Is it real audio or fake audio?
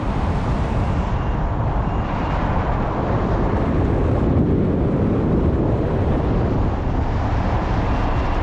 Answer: fake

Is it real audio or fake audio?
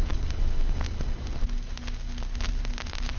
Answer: real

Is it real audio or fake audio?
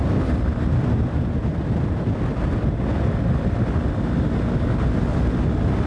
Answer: real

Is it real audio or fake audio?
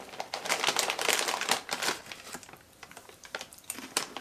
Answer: fake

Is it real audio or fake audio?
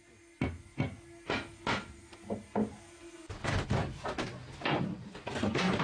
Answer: real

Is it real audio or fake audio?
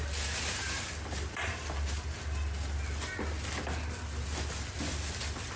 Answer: real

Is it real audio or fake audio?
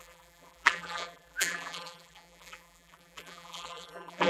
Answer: fake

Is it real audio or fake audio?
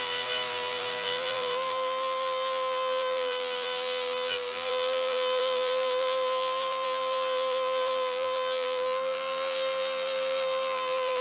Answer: fake